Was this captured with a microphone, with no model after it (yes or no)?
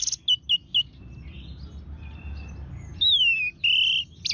yes